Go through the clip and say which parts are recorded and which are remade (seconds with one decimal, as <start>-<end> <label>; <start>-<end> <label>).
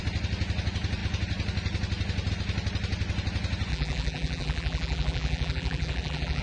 0.0-3.7 recorded; 3.7-6.4 remade